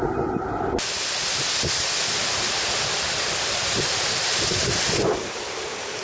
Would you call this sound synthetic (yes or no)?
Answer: no